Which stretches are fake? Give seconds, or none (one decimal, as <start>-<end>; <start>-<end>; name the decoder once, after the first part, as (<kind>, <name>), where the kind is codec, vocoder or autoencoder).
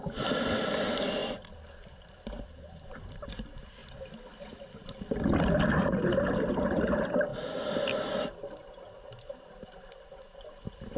none